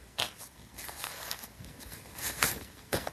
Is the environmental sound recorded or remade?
remade